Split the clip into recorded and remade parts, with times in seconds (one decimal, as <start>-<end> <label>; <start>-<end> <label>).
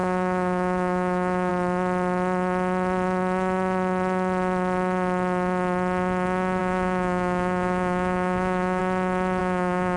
0.0-1.5 remade; 1.5-6.6 recorded; 6.6-8.8 remade; 8.8-9.4 recorded; 9.4-10.0 remade